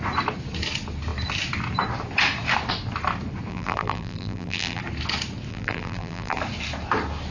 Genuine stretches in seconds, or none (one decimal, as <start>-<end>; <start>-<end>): 0.0-3.5; 4.8-5.5; 6.4-7.3